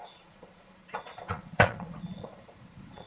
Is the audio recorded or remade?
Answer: remade